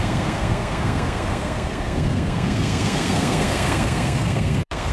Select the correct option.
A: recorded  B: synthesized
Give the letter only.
B